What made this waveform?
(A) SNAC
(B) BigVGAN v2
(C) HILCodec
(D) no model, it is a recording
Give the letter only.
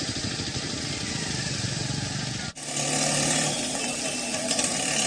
D